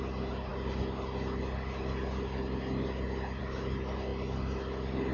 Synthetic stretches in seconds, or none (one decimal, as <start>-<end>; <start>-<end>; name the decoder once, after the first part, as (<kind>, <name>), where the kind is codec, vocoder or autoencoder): none